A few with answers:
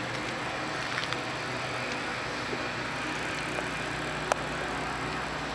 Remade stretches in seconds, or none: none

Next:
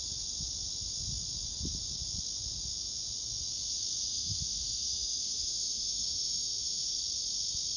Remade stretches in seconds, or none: 4.1-7.0 (autoencoder, DAC-VAE)